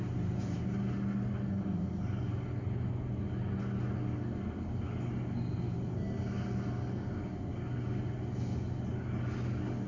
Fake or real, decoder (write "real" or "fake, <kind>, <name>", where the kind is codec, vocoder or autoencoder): real